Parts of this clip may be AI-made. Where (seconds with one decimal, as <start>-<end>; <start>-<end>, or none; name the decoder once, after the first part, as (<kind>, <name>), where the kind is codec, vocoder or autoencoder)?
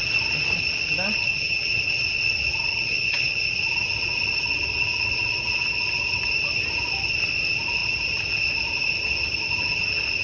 1.3-1.8 (vocoder, HiFi-GAN); 2.7-3.4